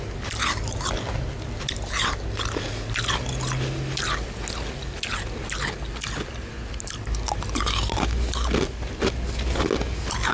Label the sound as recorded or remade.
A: recorded